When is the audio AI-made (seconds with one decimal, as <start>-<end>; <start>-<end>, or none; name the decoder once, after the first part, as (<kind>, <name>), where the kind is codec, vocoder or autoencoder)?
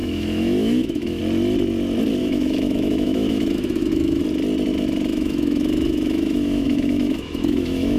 0.0-1.2 (autoencoder, DAC-VAE); 2.2-4.2; 5.1-8.0